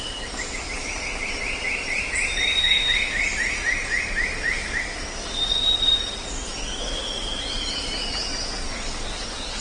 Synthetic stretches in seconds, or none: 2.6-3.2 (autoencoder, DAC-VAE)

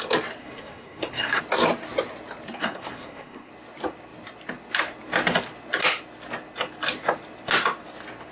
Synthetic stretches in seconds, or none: 0.4-1.4 (codec, SNAC); 2.6-3.5

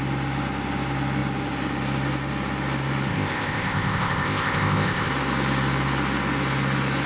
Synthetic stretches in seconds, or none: 3.1-5.1 (codec, ZipCodec)

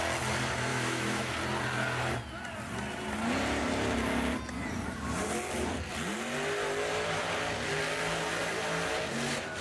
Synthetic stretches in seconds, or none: 0.7-1.3 (autoencoder, DAC-VAE)